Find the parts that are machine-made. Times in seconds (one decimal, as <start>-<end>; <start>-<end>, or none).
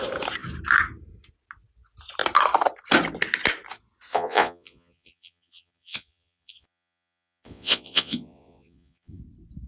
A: 4.1-9.2